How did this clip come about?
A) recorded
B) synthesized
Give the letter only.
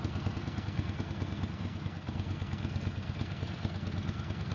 B